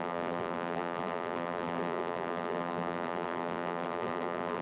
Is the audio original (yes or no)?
no